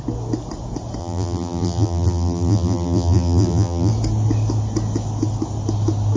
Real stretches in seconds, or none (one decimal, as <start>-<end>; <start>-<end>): 0.0-1.0; 3.9-6.2